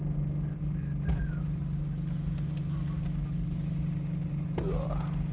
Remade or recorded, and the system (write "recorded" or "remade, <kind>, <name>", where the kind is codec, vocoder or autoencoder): recorded